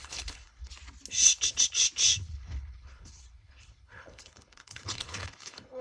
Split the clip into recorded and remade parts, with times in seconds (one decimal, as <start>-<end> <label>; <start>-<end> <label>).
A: 0.0-0.7 remade; 0.7-2.2 recorded; 2.2-5.8 remade